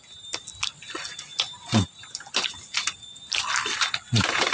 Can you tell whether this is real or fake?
real